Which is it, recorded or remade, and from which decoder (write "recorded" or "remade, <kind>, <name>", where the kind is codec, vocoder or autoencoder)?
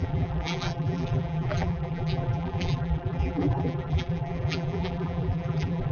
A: remade, vocoder, BigVGAN v2